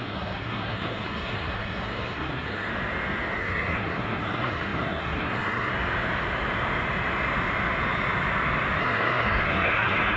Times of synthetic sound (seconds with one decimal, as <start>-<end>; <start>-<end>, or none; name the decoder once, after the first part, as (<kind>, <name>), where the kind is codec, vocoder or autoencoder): 0.0-2.7 (codec, SNAC); 3.4-5.7; 8.8-10.2